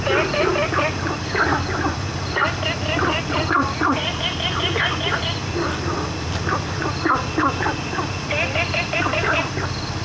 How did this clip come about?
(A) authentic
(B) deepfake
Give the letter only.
A